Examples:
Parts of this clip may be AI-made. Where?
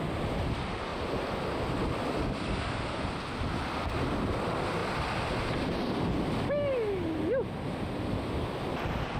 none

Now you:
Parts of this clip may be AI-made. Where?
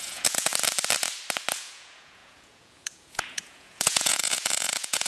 0.0-0.5 (vocoder, Vocos); 1.6-5.1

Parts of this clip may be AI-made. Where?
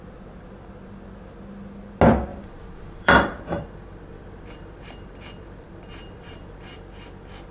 2.3-6.8 (vocoder, BigVGAN v2)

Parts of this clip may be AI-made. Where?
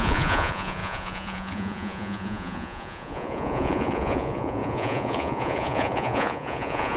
0.0-7.0 (vocoder, Vocos)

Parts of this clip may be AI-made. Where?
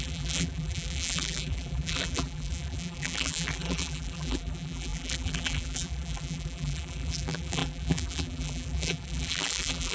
0.0-9.9 (vocoder, BigVGAN v2)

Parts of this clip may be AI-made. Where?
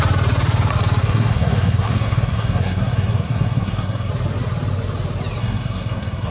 1.0-4.1 (codec, SNAC); 5.4-6.3